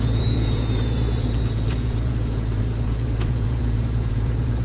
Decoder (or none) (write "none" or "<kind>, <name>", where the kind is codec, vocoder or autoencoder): vocoder, Vocos